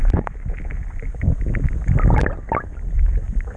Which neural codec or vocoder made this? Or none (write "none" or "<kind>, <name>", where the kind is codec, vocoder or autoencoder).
none